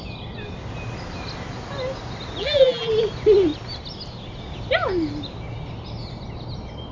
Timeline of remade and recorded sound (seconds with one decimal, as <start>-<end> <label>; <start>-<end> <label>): 0.0-2.4 recorded; 2.4-2.9 remade; 2.9-6.9 recorded